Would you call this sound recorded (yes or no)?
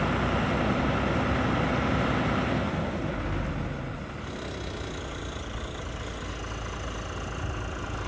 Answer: yes